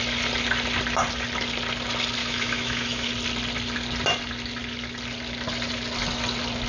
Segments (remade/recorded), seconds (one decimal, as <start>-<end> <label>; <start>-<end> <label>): 0.0-2.2 recorded; 2.2-3.1 remade; 3.1-6.7 recorded